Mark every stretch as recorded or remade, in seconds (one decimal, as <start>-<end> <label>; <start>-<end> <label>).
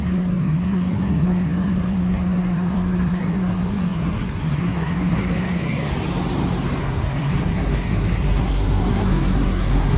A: 0.0-5.9 remade; 5.9-6.8 recorded; 6.8-10.0 remade